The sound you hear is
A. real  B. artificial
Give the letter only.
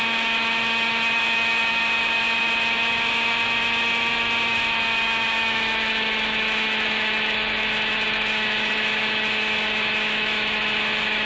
B